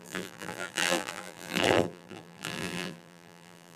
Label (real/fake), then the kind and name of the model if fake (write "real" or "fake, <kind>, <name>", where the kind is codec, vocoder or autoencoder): fake, vocoder, BigVGAN v2